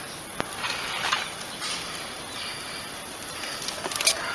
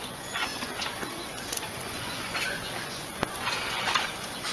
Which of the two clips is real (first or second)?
first